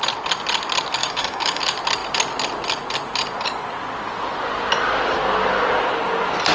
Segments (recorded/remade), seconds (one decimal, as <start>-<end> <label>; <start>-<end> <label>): 0.0-1.0 recorded; 1.0-1.6 remade; 1.6-6.5 recorded